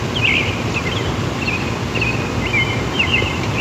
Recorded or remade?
recorded